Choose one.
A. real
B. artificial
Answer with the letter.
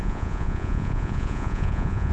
B